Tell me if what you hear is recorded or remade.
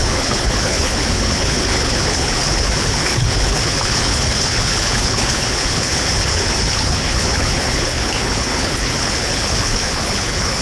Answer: remade